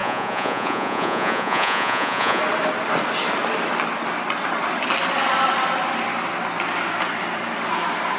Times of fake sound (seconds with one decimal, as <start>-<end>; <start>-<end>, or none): 0.0-2.4